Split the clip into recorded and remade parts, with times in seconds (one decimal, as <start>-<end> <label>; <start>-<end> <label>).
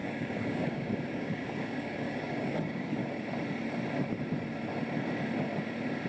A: 0.0-3.0 remade; 3.0-6.1 recorded